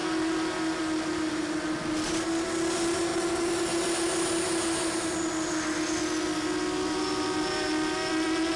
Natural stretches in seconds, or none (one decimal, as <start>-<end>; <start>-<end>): 0.0-8.6